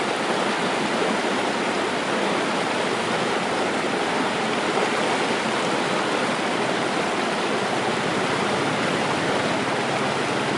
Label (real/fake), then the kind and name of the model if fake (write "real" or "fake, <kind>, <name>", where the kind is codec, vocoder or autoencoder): real